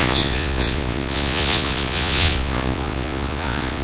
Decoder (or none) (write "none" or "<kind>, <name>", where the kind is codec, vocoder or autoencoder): vocoder, Vocos